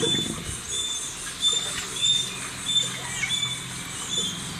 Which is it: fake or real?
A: real